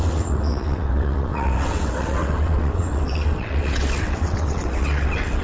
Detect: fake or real fake